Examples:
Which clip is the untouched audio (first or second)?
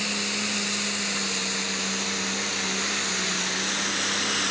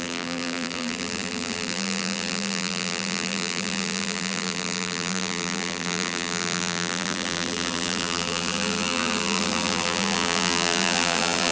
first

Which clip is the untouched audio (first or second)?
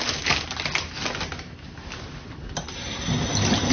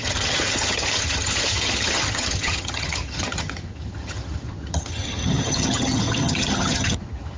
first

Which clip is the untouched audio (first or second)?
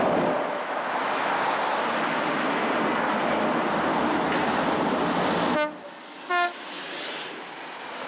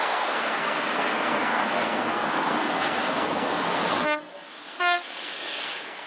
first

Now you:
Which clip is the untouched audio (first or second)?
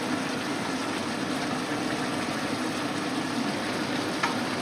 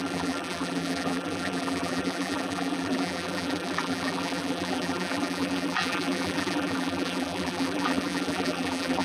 first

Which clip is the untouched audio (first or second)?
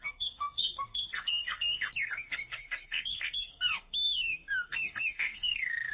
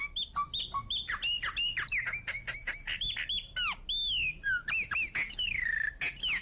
second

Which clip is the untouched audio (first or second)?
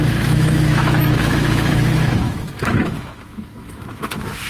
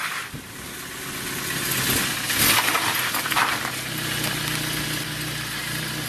second